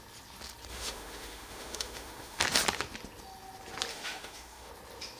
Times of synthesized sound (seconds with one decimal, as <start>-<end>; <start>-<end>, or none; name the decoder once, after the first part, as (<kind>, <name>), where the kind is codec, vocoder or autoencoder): 0.7-2.4 (autoencoder, DAC-VAE); 3.9-4.7